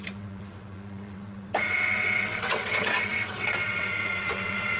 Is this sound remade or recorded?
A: remade